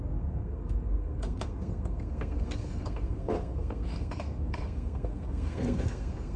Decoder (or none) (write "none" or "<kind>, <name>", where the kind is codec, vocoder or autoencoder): codec, SNAC